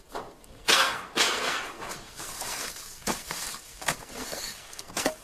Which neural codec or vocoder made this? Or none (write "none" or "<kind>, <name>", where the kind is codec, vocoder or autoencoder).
codec, SNAC